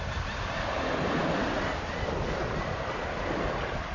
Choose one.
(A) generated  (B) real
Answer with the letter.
B